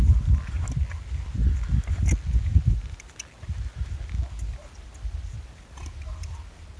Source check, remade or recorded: recorded